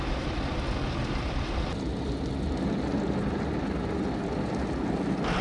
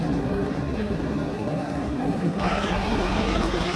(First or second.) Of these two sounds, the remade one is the second